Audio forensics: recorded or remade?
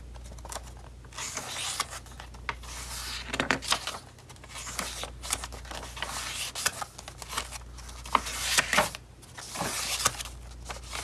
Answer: recorded